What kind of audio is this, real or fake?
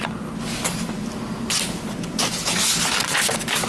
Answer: real